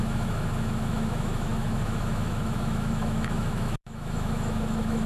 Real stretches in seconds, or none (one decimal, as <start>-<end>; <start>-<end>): none